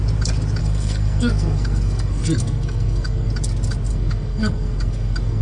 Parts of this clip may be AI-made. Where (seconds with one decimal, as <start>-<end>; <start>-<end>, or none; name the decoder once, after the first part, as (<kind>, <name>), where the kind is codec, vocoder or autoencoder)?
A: 0.6-3.3 (codec, SNAC); 3.9-5.4